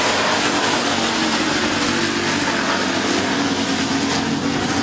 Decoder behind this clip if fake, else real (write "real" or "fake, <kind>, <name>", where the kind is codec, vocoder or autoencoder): real